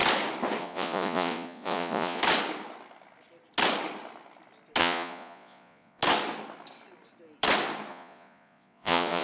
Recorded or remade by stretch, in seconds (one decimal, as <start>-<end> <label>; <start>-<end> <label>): 0.0-0.6 recorded; 0.6-2.2 remade; 2.2-4.8 recorded; 4.8-6.0 remade; 6.0-7.9 recorded; 7.9-9.2 remade